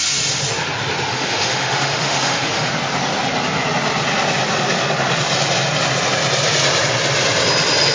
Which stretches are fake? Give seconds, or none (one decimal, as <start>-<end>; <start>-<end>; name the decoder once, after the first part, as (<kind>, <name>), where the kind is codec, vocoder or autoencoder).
1.1-2.7 (autoencoder, DAC-VAE)